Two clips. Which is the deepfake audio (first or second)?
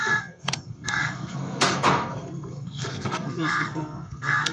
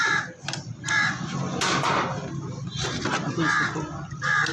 first